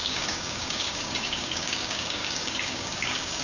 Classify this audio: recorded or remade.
remade